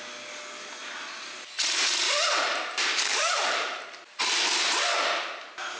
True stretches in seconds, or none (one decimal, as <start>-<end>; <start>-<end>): 0.0-2.9; 3.8-5.8